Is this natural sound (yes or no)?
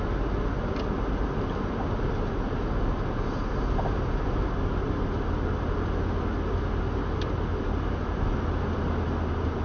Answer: yes